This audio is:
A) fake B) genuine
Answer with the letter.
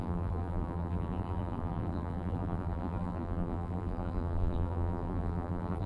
A